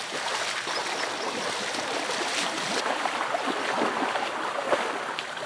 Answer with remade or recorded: recorded